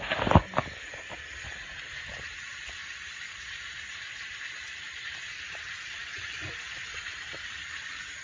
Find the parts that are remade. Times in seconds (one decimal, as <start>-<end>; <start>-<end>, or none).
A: none